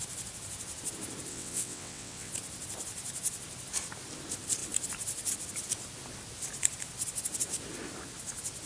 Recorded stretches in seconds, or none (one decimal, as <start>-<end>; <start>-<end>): 0.0-1.3; 2.3-8.7